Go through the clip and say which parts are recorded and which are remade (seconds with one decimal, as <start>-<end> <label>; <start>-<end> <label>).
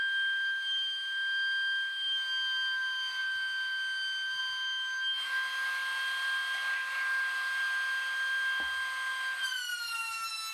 0.0-10.5 recorded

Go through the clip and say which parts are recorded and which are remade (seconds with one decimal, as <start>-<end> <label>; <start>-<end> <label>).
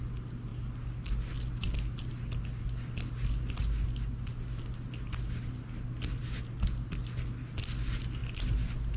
0.0-9.0 recorded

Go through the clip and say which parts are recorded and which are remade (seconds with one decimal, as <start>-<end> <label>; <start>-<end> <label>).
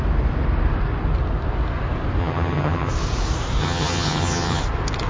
0.0-2.2 recorded; 2.2-2.9 remade; 2.9-3.6 recorded; 3.6-4.6 remade; 4.6-5.1 recorded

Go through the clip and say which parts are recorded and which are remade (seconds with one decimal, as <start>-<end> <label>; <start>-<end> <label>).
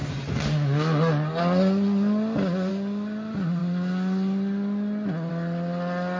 0.0-6.2 recorded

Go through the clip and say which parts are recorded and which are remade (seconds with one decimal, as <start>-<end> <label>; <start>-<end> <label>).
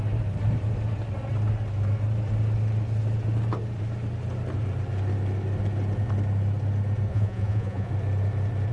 0.0-7.1 recorded; 7.1-7.9 remade; 7.9-8.7 recorded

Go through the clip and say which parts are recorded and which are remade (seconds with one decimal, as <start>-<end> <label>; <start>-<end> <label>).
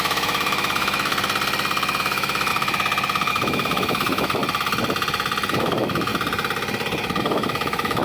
0.0-1.1 remade; 1.1-2.0 recorded; 2.0-2.5 remade; 2.5-3.3 recorded; 3.3-4.4 remade; 4.4-5.5 recorded; 5.5-6.1 remade; 6.1-7.2 recorded; 7.2-8.0 remade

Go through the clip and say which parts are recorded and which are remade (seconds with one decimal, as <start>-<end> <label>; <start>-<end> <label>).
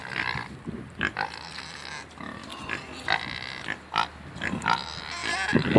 0.0-5.8 recorded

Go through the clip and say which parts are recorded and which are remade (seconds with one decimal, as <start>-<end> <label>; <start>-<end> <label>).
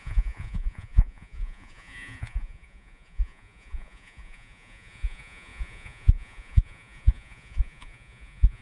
0.0-8.6 remade